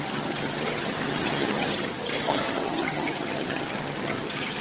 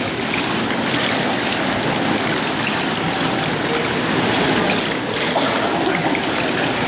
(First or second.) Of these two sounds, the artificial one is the first